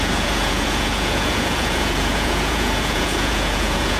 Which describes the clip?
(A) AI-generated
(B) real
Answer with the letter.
A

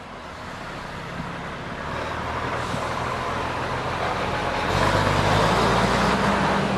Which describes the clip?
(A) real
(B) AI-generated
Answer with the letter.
A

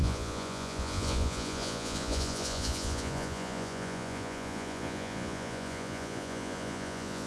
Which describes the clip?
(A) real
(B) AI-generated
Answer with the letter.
B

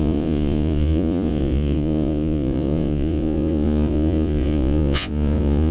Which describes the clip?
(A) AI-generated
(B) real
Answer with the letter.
A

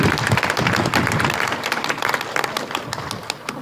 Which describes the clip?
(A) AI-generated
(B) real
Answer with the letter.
B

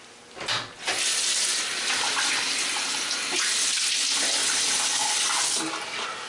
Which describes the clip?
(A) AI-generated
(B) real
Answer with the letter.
B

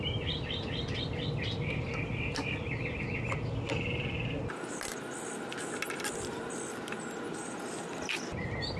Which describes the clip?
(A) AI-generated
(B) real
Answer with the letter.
B